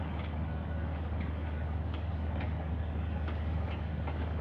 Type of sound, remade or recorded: remade